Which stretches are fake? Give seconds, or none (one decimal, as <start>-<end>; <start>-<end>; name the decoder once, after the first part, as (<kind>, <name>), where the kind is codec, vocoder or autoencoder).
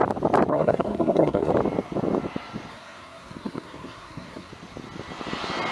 0.5-1.5 (codec, SNAC); 2.7-4.5